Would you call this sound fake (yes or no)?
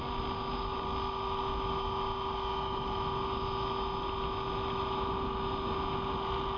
no